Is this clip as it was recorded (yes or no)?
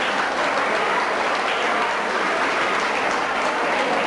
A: yes